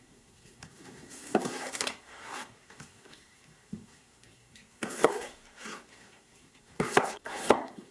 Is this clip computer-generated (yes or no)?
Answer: yes